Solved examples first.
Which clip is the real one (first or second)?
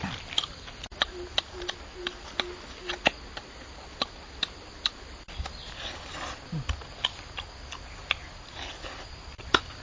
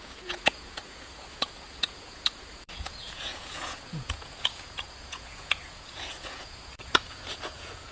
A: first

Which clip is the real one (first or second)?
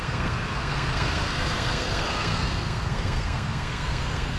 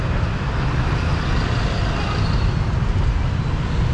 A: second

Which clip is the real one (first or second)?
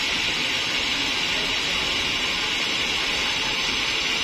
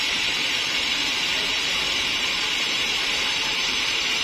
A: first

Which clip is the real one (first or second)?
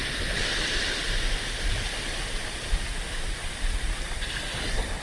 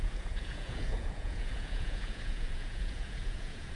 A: first